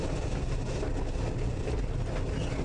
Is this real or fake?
real